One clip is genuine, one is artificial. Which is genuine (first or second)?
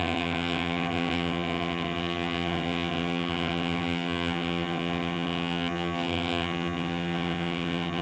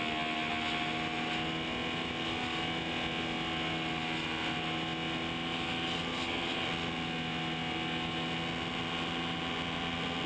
second